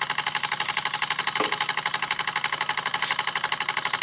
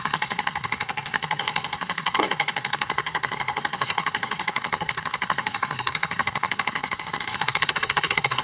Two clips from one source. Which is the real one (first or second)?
first